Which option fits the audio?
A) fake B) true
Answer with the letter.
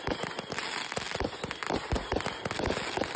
B